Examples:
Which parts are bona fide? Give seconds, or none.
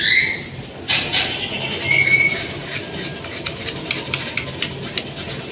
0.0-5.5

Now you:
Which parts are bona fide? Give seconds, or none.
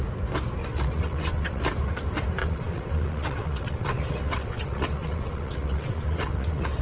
0.0-0.6; 1.6-2.4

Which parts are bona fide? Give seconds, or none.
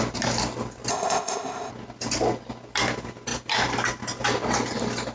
0.0-0.9; 1.7-5.1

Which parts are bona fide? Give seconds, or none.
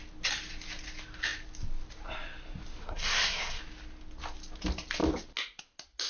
0.0-2.8; 3.6-6.1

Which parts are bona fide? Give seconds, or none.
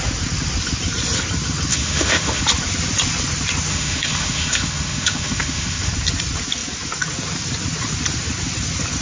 0.0-1.7; 2.4-3.7; 5.9-9.0